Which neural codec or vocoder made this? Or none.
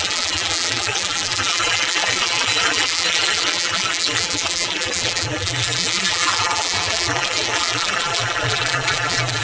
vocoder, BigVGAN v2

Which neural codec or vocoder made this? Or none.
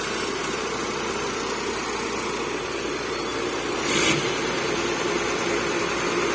none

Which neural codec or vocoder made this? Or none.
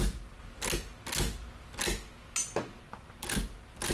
none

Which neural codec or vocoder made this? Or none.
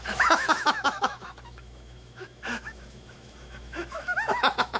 autoencoder, DAC-VAE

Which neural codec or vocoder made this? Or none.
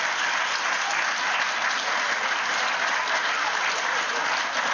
none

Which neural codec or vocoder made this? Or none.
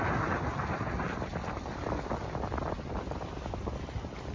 none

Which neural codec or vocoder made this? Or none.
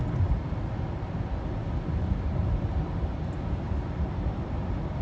none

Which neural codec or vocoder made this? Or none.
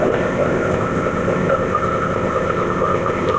codec, ZipCodec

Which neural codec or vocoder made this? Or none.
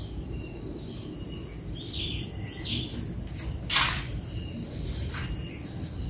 none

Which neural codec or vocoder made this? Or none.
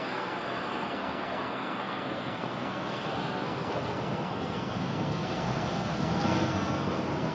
codec, SNAC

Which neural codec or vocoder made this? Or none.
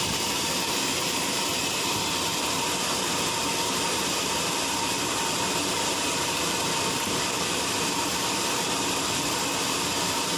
vocoder, BigVGAN v2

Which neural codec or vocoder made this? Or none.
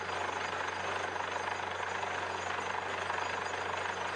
none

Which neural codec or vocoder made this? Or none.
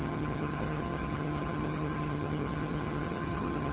vocoder, HiFi-GAN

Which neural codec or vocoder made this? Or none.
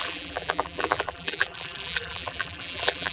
vocoder, BigVGAN v2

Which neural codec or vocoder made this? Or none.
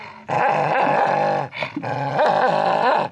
none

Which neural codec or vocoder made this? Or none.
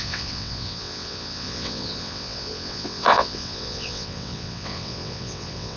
vocoder, WaveNeXt